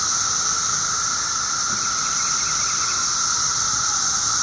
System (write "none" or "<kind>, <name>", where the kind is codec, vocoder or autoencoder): none